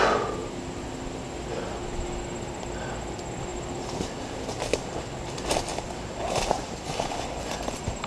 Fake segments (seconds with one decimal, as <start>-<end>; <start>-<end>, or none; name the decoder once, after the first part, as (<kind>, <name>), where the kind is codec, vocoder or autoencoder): none